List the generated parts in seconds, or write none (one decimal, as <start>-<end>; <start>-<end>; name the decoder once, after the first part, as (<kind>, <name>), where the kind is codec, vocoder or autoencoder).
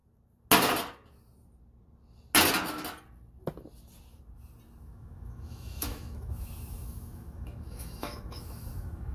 4.8-9.1 (autoencoder, DAC-VAE)